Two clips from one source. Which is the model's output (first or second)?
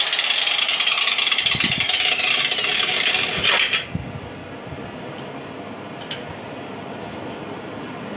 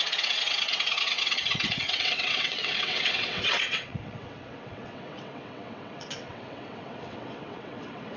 second